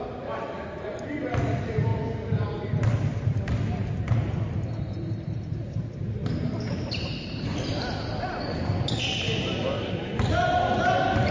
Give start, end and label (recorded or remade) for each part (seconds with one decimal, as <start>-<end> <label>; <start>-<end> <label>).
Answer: 0.0-11.3 recorded